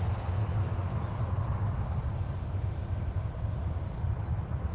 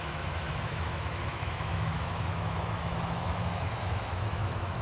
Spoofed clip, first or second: second